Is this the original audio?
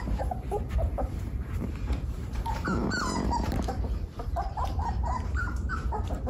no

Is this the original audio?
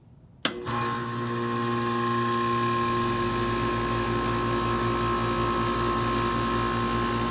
yes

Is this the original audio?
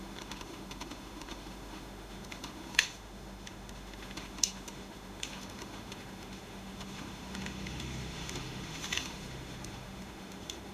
no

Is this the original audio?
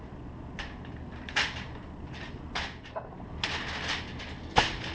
yes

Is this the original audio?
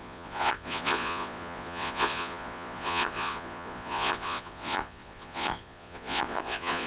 no